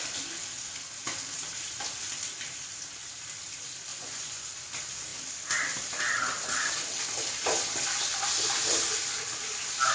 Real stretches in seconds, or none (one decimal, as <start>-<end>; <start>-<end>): 0.0-3.9; 4.5-9.9